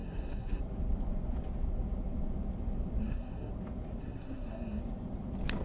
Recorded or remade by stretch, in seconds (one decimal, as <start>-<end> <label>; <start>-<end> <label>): 0.0-0.6 remade; 0.6-3.0 recorded; 3.0-3.5 remade; 3.5-4.0 recorded; 4.0-4.8 remade; 4.8-5.6 recorded